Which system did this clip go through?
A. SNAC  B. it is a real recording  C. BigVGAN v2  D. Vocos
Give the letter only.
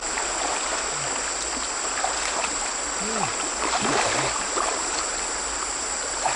B